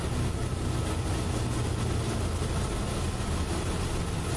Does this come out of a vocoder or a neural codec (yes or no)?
no